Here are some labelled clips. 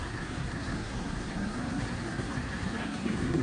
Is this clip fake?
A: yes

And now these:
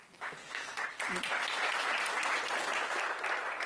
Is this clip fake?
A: no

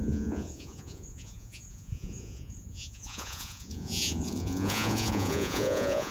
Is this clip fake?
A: yes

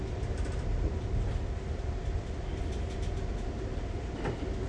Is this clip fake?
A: no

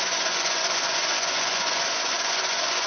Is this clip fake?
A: yes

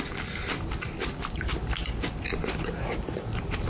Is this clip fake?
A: no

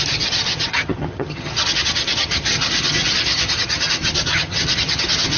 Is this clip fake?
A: yes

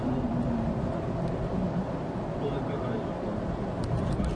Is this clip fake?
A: yes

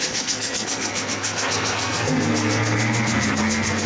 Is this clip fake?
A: yes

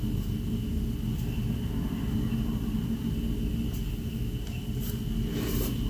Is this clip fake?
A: no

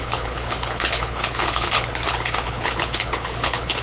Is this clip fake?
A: yes